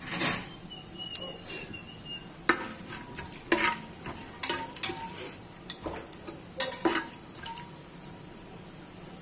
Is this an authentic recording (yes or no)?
yes